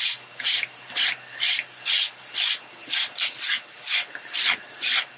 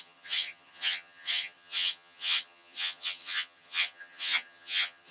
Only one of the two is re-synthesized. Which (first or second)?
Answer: second